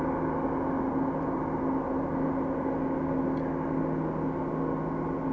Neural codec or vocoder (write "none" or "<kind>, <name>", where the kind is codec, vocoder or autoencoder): none